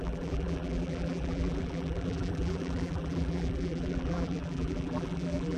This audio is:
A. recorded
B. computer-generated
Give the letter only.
B